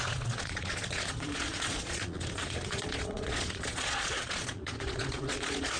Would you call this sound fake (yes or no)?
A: yes